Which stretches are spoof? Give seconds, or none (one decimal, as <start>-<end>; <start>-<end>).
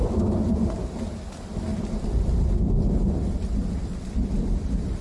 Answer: 1.7-5.0